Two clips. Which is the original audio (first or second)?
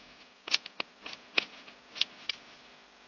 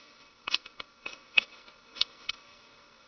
first